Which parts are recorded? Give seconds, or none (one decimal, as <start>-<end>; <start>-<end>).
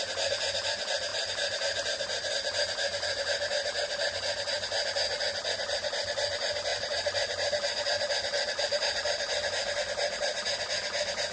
0.0-1.1; 2.3-2.9; 4.2-6.7; 9.8-11.3